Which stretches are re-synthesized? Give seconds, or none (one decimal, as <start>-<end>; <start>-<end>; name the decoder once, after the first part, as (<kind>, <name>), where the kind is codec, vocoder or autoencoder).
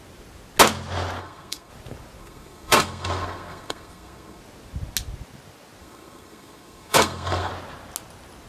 1.2-1.7 (codec, SNAC); 2.2-4.4; 5.8-7.5